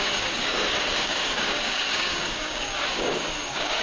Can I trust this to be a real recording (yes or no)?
no